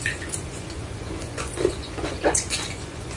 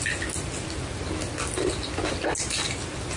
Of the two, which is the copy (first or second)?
first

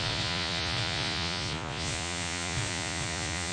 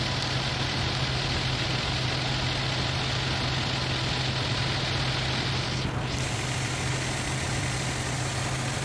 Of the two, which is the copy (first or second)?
first